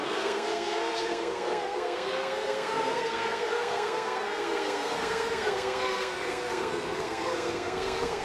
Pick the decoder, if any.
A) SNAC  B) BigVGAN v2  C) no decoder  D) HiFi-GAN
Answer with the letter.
A